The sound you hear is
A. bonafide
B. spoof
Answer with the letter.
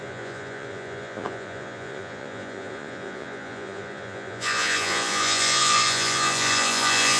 B